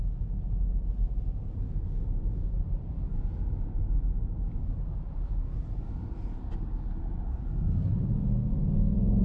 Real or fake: real